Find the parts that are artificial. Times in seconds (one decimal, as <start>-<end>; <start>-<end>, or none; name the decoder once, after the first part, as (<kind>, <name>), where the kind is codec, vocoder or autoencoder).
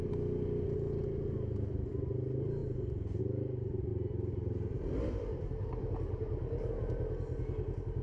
none